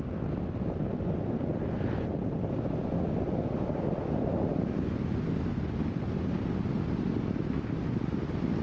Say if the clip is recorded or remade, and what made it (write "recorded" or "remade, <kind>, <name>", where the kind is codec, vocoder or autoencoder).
recorded